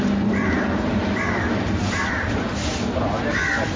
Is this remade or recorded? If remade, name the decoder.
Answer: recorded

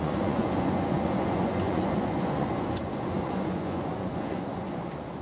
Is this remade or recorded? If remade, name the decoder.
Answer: remade, vocoder, Vocos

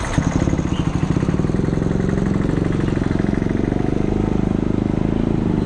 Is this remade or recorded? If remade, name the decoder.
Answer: recorded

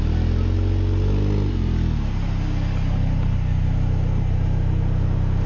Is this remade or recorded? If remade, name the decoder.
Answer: recorded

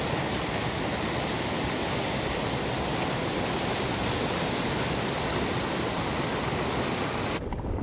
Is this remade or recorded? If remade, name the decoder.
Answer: recorded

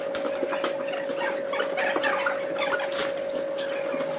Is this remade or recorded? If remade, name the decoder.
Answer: recorded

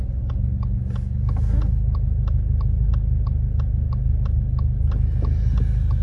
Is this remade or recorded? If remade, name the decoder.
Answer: recorded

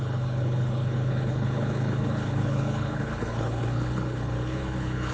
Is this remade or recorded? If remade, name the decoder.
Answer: remade, codec, HILCodec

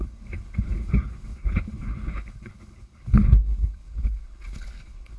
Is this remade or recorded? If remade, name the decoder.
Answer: remade, codec, HILCodec